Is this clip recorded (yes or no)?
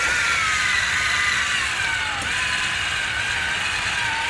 yes